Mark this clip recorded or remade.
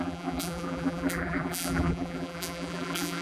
remade